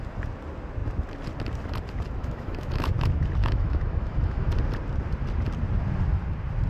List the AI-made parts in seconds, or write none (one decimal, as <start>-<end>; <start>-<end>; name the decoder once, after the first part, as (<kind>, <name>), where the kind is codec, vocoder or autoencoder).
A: 2.2-2.9 (autoencoder, DAC-VAE); 3.4-4.5